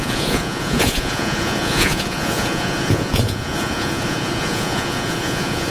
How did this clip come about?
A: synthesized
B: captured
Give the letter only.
A